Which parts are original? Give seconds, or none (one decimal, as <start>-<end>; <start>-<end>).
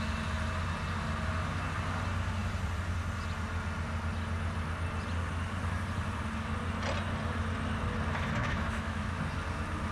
0.0-8.4; 9.2-9.9